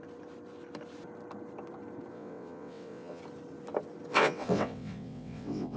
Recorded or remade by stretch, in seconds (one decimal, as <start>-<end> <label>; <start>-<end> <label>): 0.0-2.1 recorded; 2.1-3.2 remade; 3.2-4.1 recorded; 4.1-5.8 remade